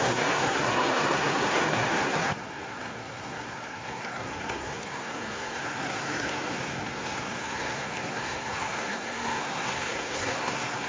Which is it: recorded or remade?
remade